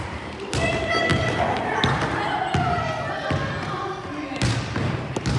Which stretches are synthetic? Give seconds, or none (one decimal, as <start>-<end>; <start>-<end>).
none